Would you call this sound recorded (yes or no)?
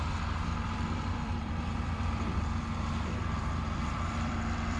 no